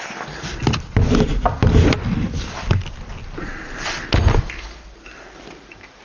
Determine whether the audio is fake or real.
real